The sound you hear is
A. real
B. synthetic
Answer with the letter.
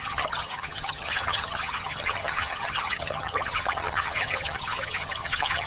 B